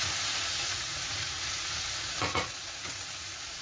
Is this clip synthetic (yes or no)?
yes